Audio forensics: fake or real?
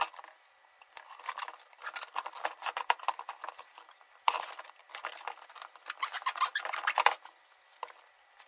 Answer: real